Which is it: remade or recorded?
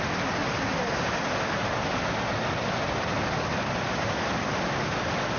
recorded